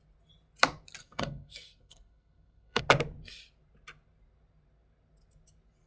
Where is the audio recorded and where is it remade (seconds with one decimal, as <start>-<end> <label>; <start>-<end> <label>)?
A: 0.0-1.0 recorded; 1.0-2.8 remade; 2.8-5.9 recorded